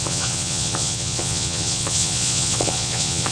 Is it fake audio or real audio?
fake